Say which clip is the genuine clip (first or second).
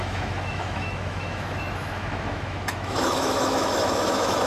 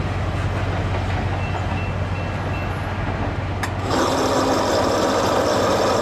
second